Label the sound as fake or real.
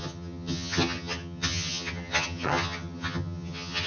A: fake